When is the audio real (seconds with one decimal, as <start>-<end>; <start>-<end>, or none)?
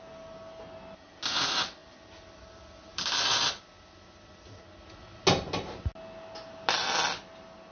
0.0-7.7